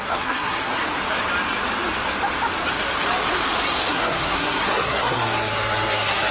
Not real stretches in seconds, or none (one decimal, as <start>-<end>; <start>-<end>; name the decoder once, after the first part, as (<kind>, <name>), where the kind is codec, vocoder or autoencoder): 0.0-0.8 (codec, SNAC); 3.9-6.3